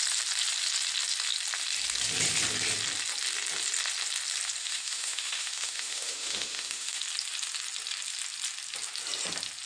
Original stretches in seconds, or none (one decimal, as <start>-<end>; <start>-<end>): 0.0-4.6; 7.0-9.7